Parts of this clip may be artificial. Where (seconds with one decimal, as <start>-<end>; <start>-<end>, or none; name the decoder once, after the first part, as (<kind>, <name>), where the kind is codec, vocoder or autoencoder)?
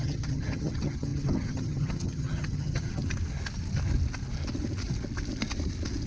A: 0.0-3.0 (vocoder, HiFi-GAN)